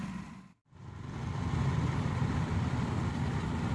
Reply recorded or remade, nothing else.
recorded